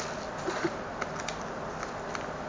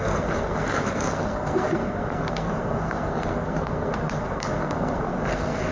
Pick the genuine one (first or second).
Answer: first